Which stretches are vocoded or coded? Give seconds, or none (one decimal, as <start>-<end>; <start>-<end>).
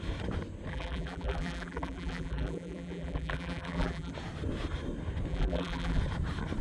0.7-4.1; 5.3-6.0